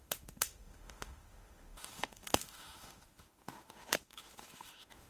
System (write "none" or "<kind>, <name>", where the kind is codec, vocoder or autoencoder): autoencoder, DAC-VAE